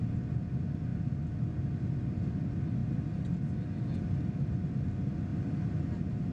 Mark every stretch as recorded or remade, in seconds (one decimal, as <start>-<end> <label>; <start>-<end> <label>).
0.0-6.3 recorded